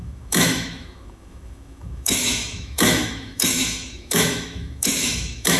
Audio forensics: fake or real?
fake